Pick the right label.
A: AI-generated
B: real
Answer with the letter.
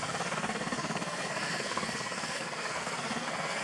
A